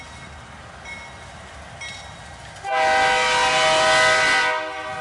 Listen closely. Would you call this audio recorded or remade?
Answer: recorded